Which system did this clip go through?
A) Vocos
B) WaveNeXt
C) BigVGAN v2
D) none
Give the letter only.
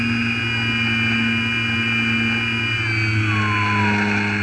D